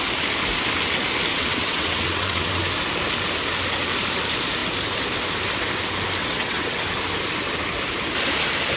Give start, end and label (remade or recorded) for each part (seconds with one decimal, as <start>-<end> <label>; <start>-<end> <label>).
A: 0.0-1.3 recorded; 1.3-2.5 remade; 2.5-6.2 recorded; 6.2-6.8 remade; 6.8-8.8 recorded